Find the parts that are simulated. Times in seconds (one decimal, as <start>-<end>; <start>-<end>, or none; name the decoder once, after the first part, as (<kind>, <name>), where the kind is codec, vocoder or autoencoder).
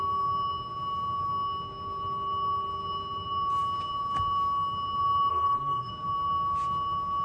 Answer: 5.3-5.9 (codec, SNAC)